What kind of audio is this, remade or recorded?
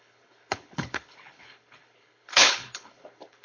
remade